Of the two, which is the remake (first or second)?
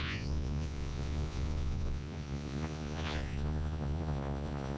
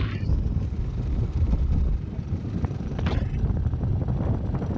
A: first